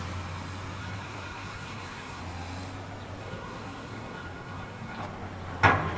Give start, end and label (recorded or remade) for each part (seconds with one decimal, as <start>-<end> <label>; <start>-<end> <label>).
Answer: 0.0-0.8 recorded; 0.8-2.2 remade; 2.2-3.2 recorded; 3.2-5.0 remade; 5.0-6.0 recorded